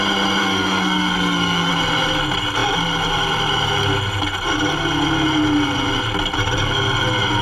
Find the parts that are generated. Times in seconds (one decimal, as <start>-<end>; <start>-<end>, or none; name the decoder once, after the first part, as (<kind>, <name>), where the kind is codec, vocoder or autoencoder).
0.4-1.7 (codec, SNAC)